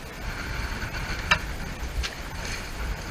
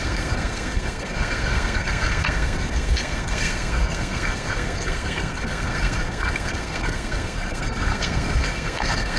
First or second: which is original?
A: first